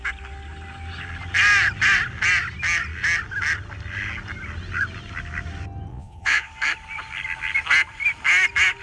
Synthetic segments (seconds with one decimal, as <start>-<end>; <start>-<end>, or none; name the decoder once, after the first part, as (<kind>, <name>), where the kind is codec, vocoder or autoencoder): 5.9-6.5 (vocoder, Vocos)